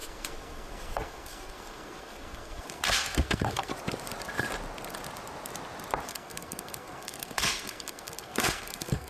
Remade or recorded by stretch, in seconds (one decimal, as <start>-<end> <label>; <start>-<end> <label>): 0.0-3.7 remade; 3.7-6.1 recorded; 6.1-9.1 remade